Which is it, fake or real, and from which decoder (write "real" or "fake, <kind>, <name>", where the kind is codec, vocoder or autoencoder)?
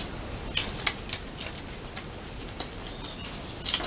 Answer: real